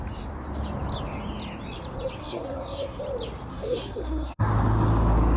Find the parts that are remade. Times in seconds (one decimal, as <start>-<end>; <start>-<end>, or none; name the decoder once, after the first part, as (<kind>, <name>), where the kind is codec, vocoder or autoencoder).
2.2-3.0 (codec, SNAC); 3.5-4.5